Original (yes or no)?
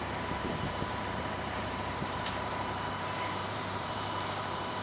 no